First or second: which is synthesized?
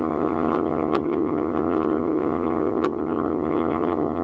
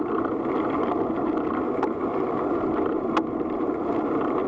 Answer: first